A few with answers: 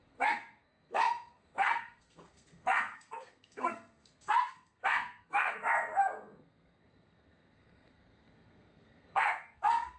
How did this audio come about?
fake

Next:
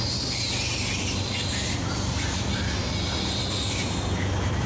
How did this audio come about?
real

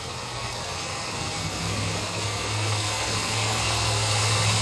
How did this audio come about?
fake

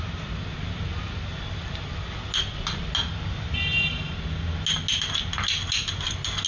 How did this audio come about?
real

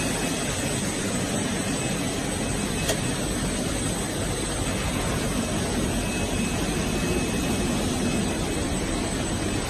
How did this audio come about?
real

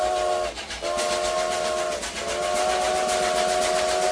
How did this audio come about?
real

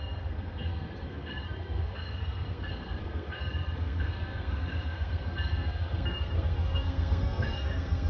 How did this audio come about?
fake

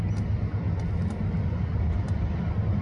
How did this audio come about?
real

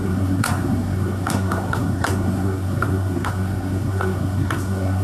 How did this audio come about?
fake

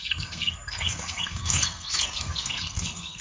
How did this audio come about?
fake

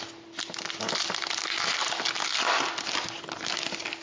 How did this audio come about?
real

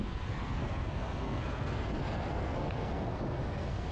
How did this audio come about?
fake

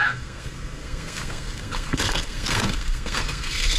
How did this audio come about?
fake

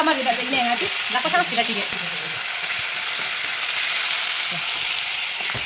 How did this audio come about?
real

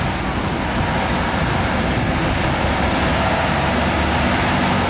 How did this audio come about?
real